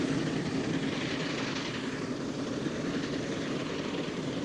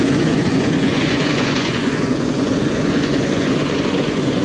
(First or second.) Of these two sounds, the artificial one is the second